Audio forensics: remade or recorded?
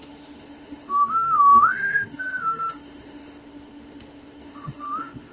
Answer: remade